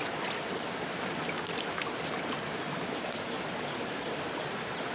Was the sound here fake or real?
real